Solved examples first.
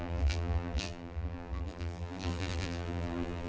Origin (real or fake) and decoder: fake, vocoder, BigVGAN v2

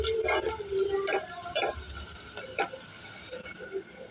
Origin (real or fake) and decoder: fake, vocoder, BigVGAN v2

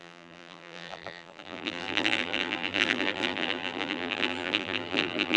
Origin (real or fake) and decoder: fake, vocoder, BigVGAN v2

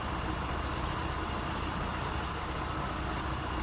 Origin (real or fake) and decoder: real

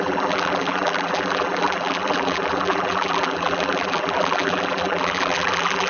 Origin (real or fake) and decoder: fake, vocoder, BigVGAN v2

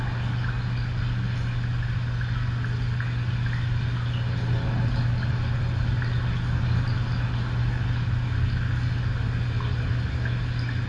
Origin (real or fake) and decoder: real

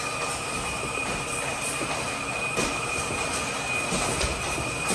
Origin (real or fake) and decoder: real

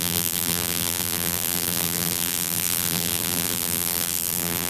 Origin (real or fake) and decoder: fake, vocoder, BigVGAN v2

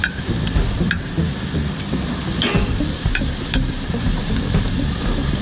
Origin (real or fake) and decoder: fake, vocoder, BigVGAN v2